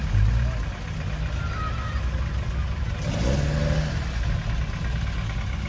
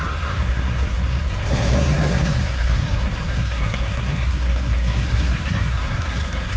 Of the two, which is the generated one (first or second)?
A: second